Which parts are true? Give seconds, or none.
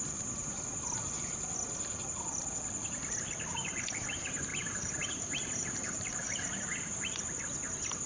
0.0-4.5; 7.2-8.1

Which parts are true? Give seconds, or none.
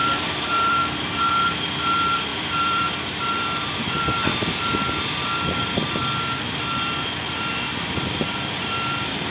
6.0-6.6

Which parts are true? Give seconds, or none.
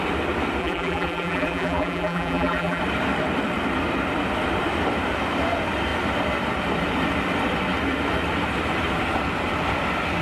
0.0-0.6; 2.8-10.2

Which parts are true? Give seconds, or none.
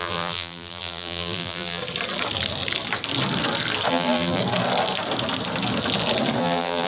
1.8-3.9; 4.4-6.4